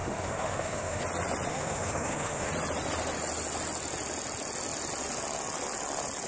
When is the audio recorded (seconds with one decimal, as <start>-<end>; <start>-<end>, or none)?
1.0-1.5; 2.5-6.3